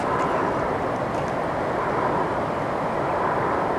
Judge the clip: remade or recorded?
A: recorded